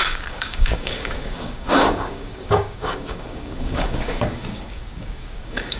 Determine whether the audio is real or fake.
fake